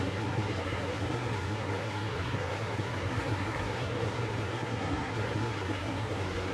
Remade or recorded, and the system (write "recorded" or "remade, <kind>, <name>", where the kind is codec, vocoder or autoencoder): remade, codec, SNAC